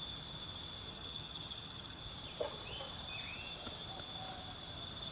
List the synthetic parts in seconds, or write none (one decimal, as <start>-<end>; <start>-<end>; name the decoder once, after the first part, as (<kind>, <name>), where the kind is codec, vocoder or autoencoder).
0.9-2.0 (vocoder, HiFi-GAN)